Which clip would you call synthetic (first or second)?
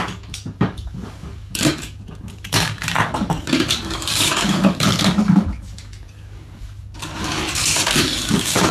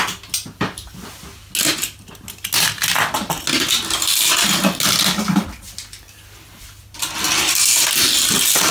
first